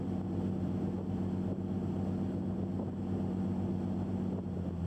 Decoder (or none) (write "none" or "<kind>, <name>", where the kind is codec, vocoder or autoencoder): none